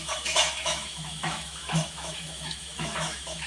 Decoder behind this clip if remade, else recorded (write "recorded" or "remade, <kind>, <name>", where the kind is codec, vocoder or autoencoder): remade, autoencoder, DAC-VAE